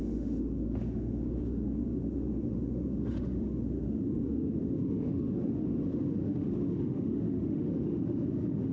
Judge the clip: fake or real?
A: fake